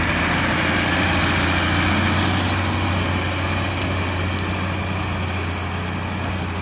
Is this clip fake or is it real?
real